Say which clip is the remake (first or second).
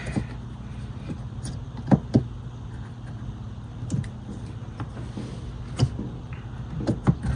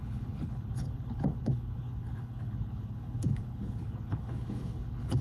second